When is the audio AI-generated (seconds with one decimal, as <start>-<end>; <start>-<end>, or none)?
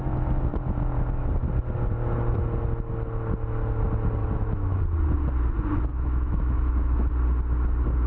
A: 4.2-4.8; 5.9-7.1